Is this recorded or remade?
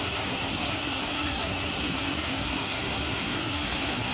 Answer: remade